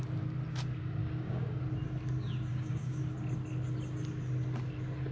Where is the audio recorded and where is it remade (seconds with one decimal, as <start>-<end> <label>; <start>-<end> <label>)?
0.0-1.0 recorded; 1.0-1.6 remade; 1.6-2.5 recorded; 2.5-3.0 remade; 3.0-5.1 recorded